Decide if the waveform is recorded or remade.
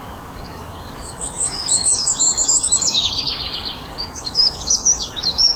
remade